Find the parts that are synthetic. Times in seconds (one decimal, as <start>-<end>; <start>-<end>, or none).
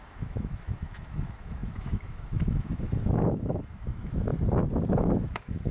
0.0-4.3; 4.9-5.7